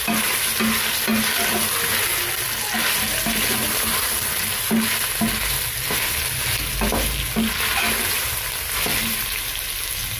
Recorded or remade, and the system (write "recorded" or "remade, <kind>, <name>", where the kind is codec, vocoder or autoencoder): recorded